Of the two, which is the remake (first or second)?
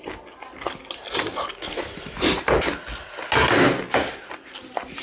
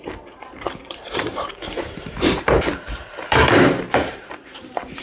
second